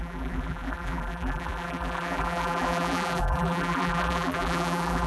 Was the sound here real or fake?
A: fake